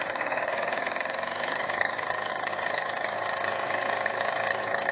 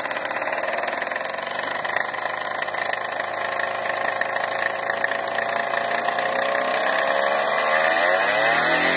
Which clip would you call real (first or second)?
second